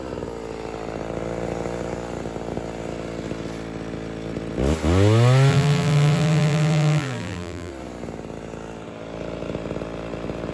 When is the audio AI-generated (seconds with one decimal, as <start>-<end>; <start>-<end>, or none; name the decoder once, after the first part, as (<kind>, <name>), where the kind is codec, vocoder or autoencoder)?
5.5-7.7 (vocoder, BigVGAN v2)